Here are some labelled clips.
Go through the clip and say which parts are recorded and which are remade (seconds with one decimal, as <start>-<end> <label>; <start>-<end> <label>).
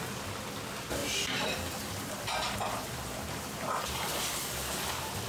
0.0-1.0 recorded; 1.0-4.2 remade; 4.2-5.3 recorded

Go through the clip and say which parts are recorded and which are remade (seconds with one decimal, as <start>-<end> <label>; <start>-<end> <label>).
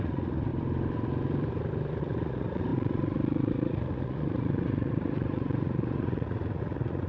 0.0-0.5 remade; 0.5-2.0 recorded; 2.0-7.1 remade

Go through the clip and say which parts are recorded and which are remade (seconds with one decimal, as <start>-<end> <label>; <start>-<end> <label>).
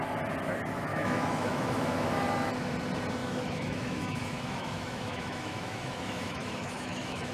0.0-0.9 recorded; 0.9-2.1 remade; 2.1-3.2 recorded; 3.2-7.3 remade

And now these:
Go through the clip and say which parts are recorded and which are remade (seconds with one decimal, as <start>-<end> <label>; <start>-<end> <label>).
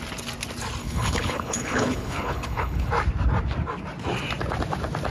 0.0-0.8 recorded; 0.8-2.9 remade; 2.9-5.1 recorded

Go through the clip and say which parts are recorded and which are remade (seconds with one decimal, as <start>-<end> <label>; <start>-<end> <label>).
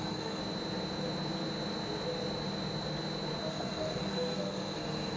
0.0-0.4 remade; 0.4-3.5 recorded; 3.5-5.2 remade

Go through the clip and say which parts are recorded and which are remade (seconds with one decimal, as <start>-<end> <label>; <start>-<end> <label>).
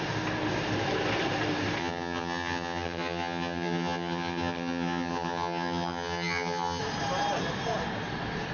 0.0-1.8 recorded; 1.8-6.8 remade; 6.8-8.5 recorded